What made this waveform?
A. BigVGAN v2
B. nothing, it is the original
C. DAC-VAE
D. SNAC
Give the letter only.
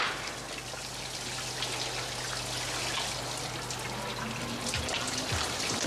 B